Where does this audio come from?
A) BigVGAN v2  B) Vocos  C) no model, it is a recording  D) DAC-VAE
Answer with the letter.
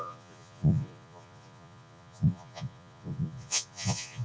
B